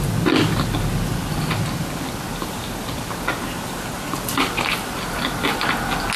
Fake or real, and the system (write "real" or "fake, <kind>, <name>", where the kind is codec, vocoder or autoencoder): real